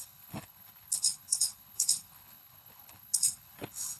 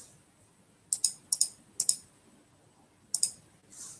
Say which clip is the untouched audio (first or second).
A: second